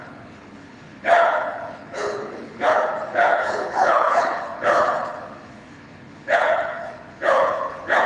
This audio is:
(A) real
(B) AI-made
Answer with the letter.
B